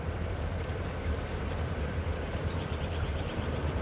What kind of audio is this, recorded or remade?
remade